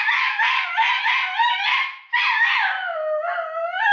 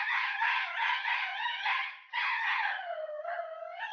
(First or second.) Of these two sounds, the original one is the first